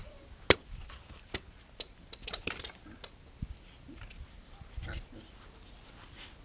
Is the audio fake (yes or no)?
no